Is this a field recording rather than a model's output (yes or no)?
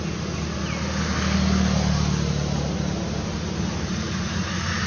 yes